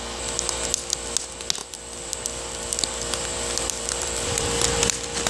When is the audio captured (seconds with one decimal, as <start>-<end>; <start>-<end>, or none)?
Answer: 0.0-1.6; 4.8-5.3